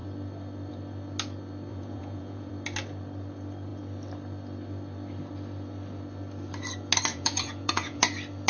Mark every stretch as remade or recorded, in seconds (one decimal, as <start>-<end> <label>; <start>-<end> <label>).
0.0-1.7 recorded; 1.7-2.5 remade; 2.5-7.1 recorded; 7.1-8.0 remade; 8.0-8.5 recorded